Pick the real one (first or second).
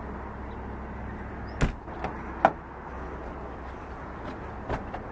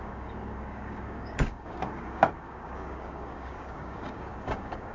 first